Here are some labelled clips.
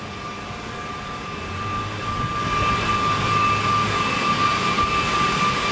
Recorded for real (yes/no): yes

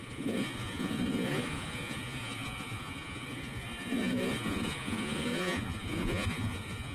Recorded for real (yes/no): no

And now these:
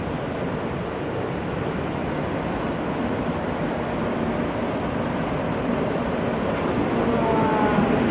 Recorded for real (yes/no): yes